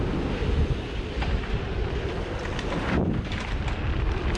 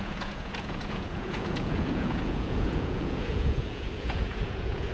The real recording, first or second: first